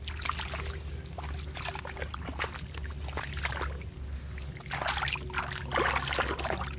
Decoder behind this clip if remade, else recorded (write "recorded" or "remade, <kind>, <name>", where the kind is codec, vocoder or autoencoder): recorded